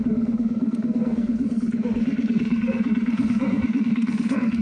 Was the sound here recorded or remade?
remade